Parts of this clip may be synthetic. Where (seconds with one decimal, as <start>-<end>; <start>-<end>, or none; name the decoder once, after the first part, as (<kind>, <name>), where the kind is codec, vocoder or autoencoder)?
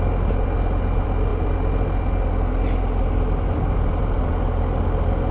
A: none